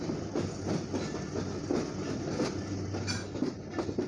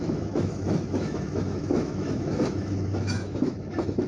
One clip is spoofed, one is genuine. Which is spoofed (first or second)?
second